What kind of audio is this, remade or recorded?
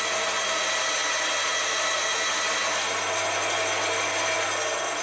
recorded